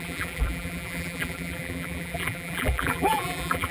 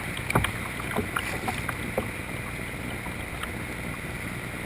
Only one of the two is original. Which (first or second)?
second